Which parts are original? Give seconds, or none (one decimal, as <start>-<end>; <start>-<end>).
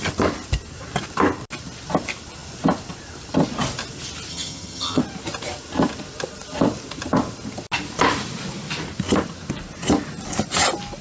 0.0-4.3; 5.0-11.0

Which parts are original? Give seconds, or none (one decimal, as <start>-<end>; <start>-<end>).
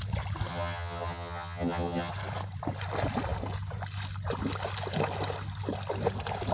0.0-0.5; 2.1-6.5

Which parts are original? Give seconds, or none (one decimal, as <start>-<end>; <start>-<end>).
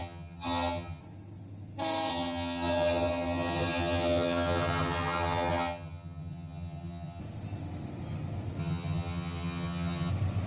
1.0-2.1; 7.2-8.6; 10.1-10.5